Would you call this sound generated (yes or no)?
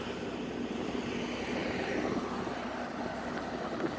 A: no